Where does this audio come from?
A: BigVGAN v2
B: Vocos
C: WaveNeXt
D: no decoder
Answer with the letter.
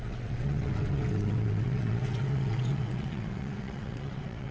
C